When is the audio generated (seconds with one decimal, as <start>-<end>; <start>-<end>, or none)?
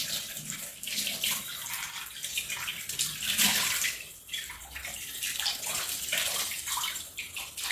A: 0.7-1.4; 2.7-7.3